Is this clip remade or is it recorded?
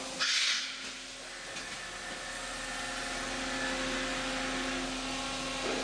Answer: recorded